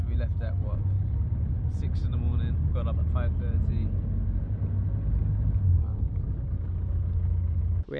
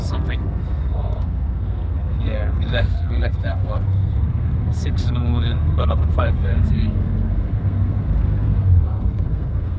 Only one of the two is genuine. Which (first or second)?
first